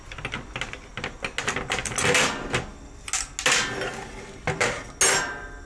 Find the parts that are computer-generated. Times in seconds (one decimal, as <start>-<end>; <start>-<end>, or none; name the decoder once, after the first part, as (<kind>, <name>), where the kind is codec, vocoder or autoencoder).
none